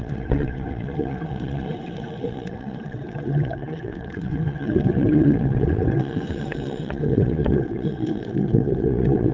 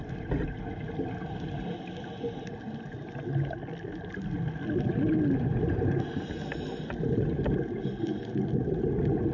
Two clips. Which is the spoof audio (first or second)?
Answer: first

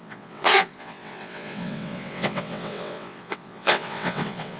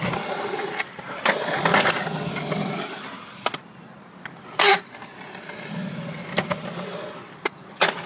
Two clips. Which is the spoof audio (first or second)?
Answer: first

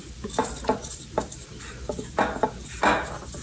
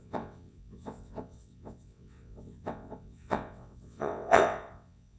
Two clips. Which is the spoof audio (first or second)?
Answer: second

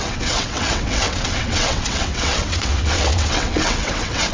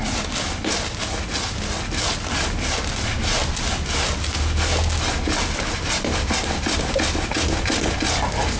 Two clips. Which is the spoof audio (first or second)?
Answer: first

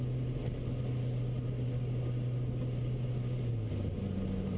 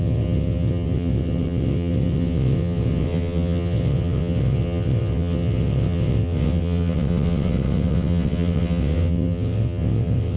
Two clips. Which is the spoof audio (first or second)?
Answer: second